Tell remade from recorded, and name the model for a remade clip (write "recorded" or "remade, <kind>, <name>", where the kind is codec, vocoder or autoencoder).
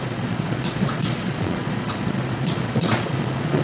remade, vocoder, Vocos